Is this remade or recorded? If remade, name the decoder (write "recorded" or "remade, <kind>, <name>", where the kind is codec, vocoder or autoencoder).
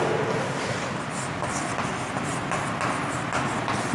recorded